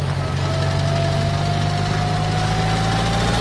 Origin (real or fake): real